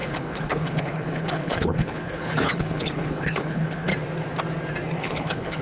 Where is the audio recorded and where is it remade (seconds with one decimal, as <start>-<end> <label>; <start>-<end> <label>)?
0.0-3.9 remade; 3.9-5.0 recorded; 5.0-5.6 remade